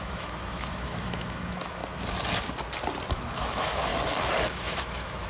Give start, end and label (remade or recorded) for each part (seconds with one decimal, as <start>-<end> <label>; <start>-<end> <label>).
0.0-1.8 remade; 1.8-3.1 recorded; 3.1-3.9 remade; 3.9-4.5 recorded; 4.5-5.3 remade